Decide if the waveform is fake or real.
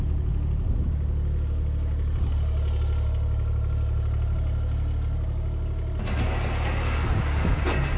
real